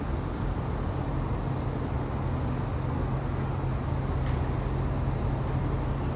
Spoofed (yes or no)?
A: no